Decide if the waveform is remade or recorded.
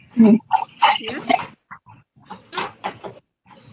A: remade